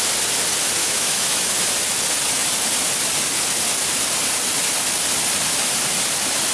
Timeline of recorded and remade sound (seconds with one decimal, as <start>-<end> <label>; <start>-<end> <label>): 0.0-0.8 recorded; 0.8-1.7 remade; 1.7-6.5 recorded